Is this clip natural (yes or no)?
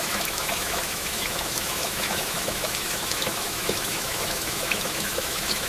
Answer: no